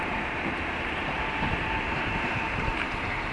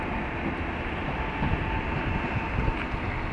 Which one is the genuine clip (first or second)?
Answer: second